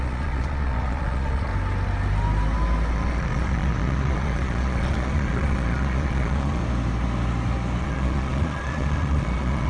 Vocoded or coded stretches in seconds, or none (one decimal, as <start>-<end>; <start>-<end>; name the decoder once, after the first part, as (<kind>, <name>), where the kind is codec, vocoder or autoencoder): 0.0-1.5 (vocoder, Vocos); 2.9-6.6; 7.8-9.7